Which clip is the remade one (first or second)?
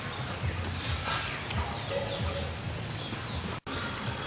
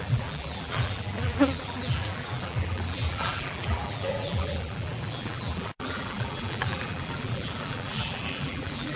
second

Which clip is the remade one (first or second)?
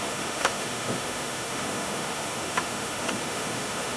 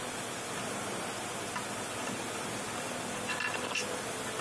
first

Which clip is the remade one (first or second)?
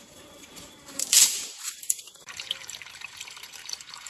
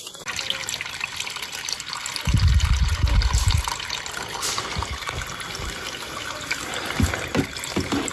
first